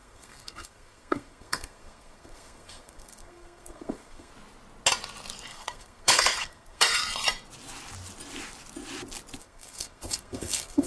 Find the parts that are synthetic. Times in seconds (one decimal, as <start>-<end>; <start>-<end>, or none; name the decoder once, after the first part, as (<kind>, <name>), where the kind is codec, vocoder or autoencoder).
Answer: 0.0-4.3 (codec, SNAC); 5.5-7.0; 9.4-10.9